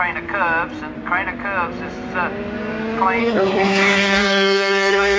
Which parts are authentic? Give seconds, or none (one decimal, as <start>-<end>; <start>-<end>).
0.0-3.2